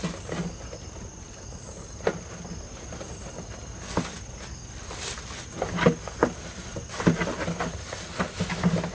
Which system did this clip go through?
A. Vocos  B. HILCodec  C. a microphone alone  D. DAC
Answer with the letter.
C